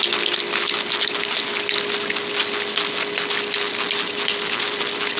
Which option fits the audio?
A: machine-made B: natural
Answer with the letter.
B